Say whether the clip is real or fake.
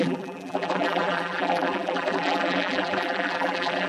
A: fake